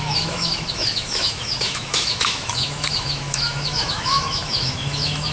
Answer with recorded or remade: remade